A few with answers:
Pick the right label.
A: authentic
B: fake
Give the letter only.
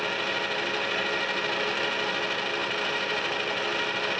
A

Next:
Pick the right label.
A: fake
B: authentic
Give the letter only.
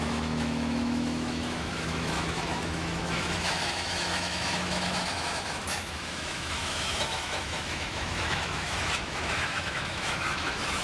A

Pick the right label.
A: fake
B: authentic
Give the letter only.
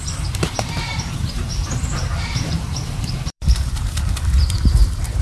A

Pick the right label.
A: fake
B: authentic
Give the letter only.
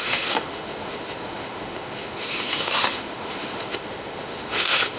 A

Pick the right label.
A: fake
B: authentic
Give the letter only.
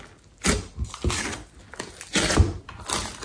B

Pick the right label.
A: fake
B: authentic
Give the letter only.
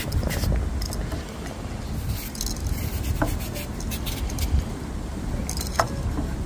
B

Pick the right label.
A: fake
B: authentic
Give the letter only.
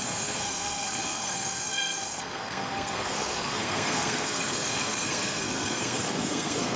A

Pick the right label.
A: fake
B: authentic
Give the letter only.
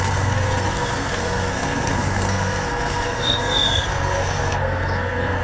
A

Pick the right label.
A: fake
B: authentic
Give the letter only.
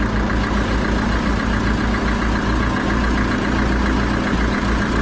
B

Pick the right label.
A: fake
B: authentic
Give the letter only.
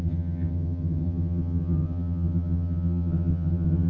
A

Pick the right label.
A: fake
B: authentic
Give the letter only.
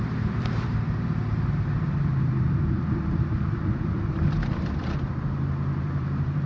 A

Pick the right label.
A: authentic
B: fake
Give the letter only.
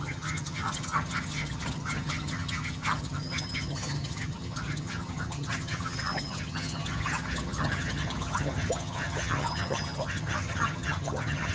B